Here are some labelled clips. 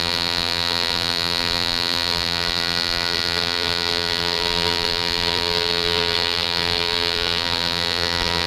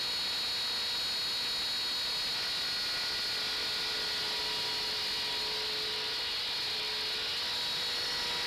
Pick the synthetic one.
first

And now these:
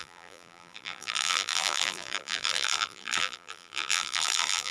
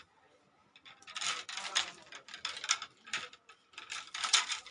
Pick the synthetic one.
first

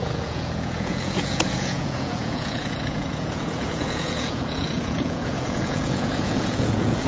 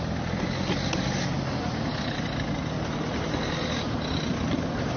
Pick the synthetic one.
first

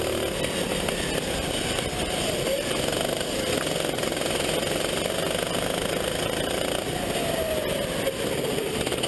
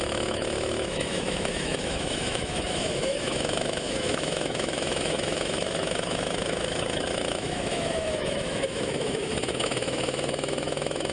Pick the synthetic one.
second